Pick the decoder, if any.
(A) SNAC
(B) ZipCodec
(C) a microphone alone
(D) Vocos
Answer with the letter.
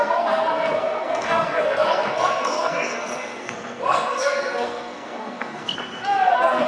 A